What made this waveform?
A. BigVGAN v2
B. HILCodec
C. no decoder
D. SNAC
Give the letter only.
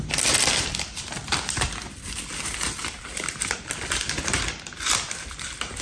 A